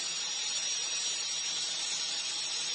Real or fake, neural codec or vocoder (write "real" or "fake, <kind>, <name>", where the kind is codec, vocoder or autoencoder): real